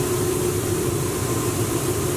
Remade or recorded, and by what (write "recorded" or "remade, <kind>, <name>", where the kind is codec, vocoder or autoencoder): remade, vocoder, BigVGAN v2